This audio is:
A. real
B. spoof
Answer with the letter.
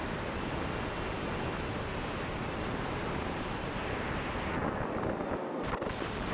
A